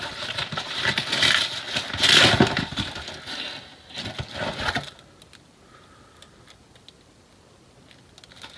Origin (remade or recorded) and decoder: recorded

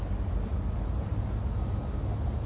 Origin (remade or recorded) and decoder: recorded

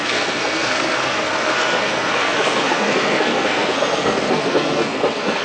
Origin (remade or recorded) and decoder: remade, codec, SNAC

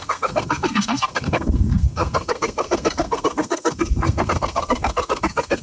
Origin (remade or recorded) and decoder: remade, codec, SNAC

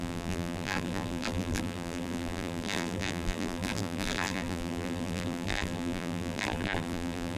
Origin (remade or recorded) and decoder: remade, vocoder, BigVGAN v2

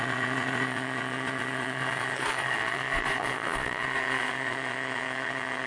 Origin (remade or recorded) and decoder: remade, vocoder, Vocos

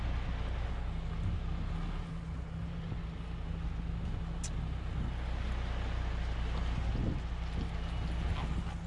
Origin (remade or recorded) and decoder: recorded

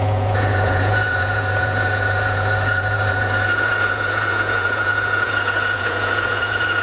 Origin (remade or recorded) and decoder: remade, vocoder, Vocos